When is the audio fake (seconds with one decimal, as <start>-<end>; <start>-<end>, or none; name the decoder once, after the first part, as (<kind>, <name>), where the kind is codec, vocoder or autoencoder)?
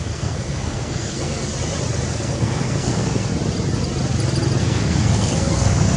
0.0-1.5 (codec, SNAC); 2.1-3.3; 4.6-6.0